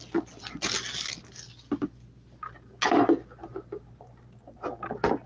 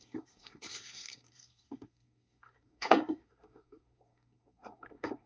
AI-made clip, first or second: second